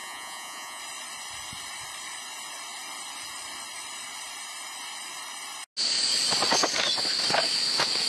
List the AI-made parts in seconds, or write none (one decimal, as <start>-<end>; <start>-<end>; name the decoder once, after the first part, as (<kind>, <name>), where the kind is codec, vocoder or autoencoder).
0.0-0.8 (vocoder, Vocos)

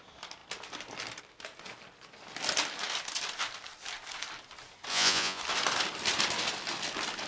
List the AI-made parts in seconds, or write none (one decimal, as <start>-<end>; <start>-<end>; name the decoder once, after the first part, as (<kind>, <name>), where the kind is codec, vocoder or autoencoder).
4.9-5.4 (vocoder, Vocos)